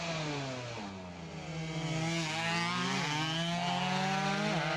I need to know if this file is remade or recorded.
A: recorded